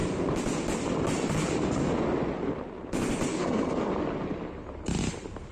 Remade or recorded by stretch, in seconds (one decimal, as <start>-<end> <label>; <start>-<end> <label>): 0.0-3.3 recorded; 3.3-3.9 remade; 3.9-5.5 recorded